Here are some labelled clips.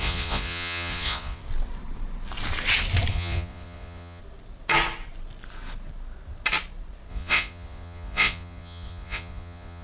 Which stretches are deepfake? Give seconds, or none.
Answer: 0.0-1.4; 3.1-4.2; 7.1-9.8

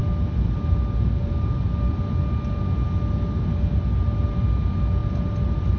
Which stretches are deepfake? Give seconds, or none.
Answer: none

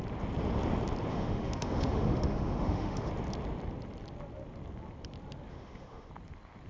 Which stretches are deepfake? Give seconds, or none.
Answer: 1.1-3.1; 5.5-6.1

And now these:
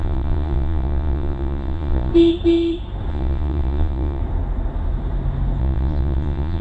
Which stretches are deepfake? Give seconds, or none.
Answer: 0.0-2.1; 3.1-4.2; 5.6-6.6

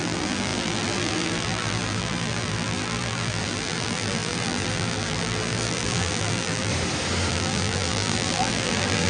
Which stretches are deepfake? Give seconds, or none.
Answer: 0.0-6.7; 7.3-9.1

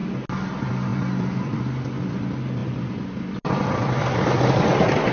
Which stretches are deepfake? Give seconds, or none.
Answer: 0.9-1.6; 2.6-5.1

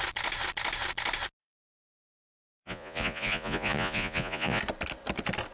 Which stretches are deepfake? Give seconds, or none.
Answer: 1.4-4.6

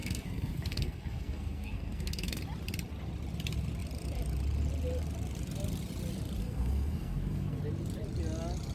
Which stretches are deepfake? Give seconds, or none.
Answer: 0.0-2.4; 6.4-7.6